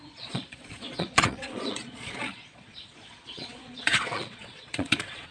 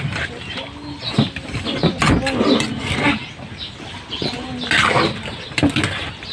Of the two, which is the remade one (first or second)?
first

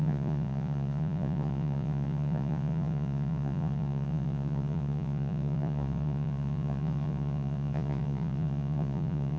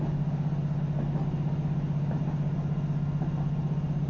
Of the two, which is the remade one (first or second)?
first